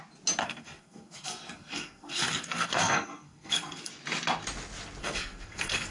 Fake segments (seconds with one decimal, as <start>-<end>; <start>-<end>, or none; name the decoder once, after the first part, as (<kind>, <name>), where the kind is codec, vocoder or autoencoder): 0.4-3.9 (codec, SNAC); 5.0-5.9